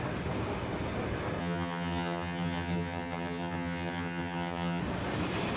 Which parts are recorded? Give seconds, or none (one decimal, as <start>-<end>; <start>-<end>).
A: 0.0-1.4; 4.8-5.6